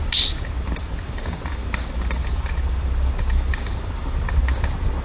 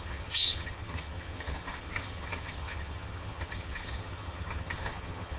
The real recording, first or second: first